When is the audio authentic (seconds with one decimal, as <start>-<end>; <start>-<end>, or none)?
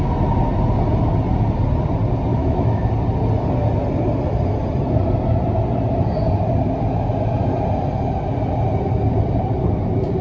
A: 0.0-2.3; 2.9-10.2